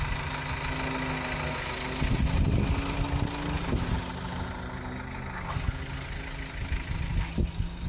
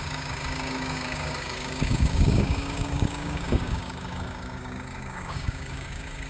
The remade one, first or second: second